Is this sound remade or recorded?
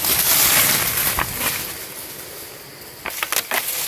recorded